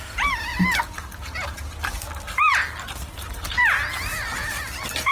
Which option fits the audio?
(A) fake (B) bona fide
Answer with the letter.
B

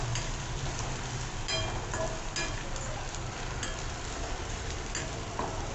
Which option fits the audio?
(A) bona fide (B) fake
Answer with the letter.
A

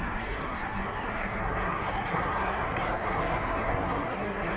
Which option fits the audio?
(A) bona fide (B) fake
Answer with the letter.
B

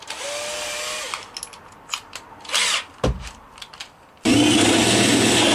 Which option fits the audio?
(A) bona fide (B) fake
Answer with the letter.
A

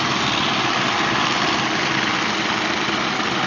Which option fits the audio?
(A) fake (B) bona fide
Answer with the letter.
B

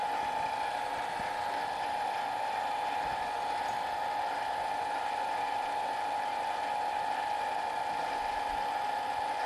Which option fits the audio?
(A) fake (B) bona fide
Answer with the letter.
B